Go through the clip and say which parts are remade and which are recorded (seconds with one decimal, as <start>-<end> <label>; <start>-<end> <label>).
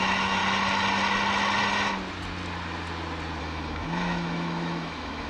0.0-0.4 remade; 0.4-3.4 recorded; 3.4-5.3 remade